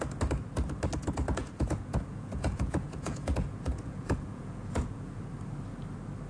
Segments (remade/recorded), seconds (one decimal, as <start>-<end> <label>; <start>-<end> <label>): 0.0-1.4 recorded; 1.4-5.2 remade; 5.2-6.3 recorded